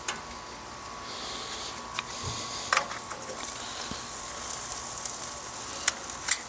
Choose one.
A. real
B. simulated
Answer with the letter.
A